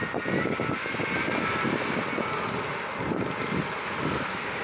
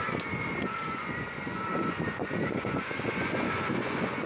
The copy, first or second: second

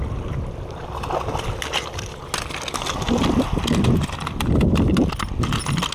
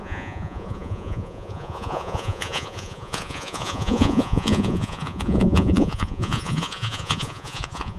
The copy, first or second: second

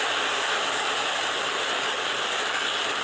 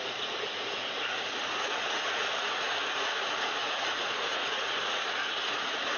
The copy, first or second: second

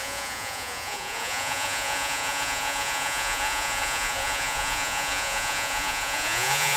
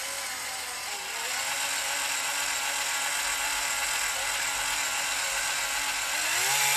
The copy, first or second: first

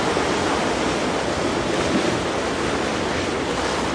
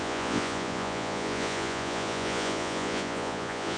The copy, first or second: second